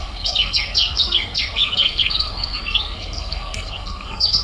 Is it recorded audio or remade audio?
remade